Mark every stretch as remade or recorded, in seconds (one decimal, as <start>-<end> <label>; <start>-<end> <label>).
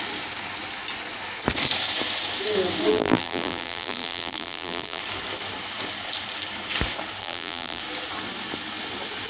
0.0-2.9 recorded; 2.9-5.0 remade; 5.0-7.2 recorded; 7.2-7.8 remade; 7.8-9.3 recorded